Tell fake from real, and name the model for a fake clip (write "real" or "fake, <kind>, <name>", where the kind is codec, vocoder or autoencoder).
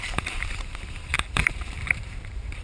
fake, vocoder, BigVGAN v2